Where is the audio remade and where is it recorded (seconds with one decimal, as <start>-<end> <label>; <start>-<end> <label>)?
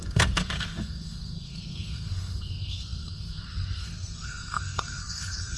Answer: 0.0-5.6 remade